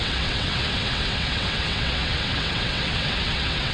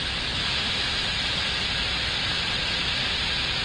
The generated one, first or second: first